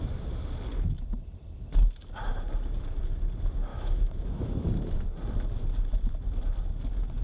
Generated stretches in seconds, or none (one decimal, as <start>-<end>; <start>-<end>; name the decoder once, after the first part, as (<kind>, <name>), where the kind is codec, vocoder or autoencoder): 3.7-4.7 (autoencoder, DAC-VAE)